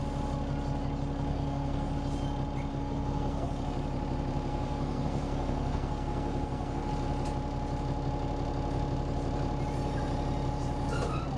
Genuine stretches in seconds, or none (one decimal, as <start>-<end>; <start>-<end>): 0.0-1.3; 1.9-2.7; 3.5-4.5; 6.9-11.4